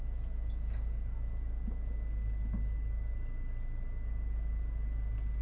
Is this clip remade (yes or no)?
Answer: no